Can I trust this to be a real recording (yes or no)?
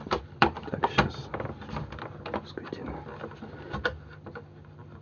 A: no